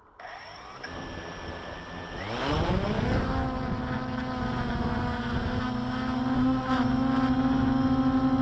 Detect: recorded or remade recorded